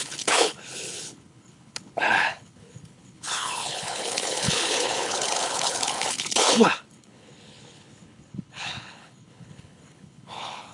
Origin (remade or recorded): remade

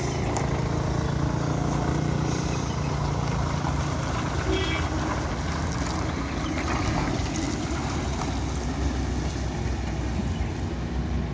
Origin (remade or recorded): recorded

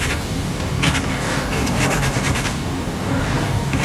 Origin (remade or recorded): remade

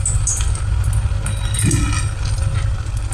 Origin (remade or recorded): recorded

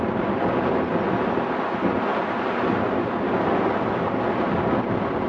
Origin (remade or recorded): recorded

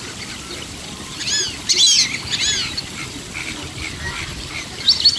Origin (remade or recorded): recorded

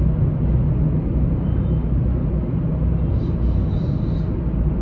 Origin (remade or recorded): recorded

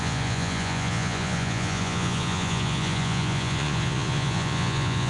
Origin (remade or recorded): remade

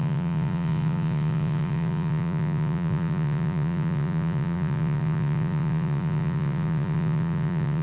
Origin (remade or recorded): remade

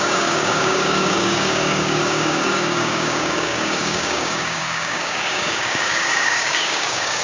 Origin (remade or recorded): remade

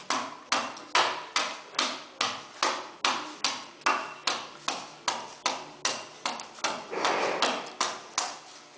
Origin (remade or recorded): recorded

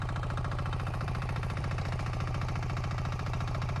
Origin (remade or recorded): remade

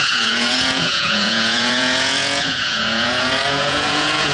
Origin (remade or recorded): remade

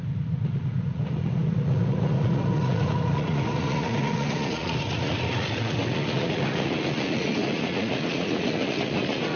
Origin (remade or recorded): remade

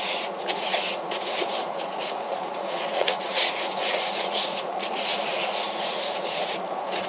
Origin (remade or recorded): remade